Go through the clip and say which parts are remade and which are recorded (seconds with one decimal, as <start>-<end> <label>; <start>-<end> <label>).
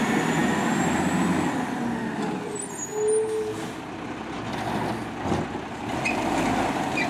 0.0-7.1 recorded